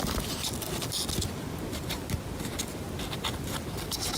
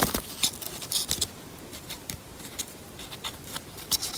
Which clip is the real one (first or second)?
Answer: first